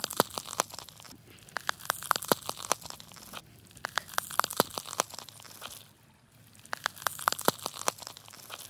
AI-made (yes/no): no